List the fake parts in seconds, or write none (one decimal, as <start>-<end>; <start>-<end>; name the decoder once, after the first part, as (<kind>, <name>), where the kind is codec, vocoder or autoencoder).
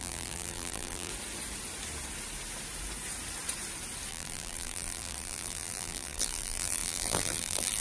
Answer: 0.0-1.1 (vocoder, BigVGAN v2); 4.1-7.8